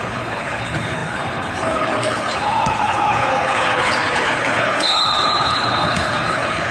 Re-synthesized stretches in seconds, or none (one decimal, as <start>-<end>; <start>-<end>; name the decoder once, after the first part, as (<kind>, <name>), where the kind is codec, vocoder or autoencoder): 0.0-6.7 (codec, HILCodec)